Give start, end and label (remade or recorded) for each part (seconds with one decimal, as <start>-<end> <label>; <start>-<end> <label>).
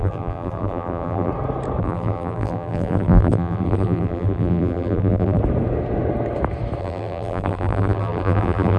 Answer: 0.0-1.3 remade; 1.3-1.8 recorded; 1.8-5.4 remade; 5.4-6.8 recorded; 6.8-8.8 remade